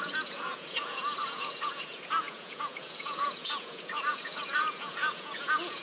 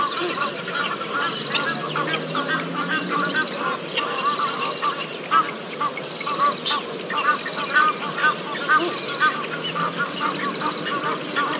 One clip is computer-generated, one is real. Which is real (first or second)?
second